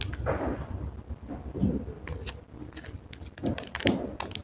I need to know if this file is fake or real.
real